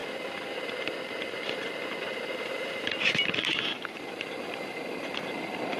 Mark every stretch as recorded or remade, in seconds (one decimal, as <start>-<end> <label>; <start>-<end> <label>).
0.0-5.8 recorded